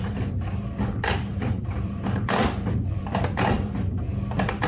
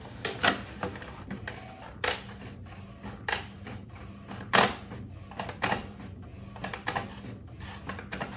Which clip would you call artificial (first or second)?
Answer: first